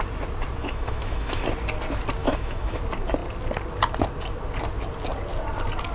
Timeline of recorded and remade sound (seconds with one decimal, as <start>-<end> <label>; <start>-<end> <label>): 0.0-0.6 recorded; 0.6-1.4 remade; 1.4-2.2 recorded; 2.2-2.8 remade; 2.8-5.9 recorded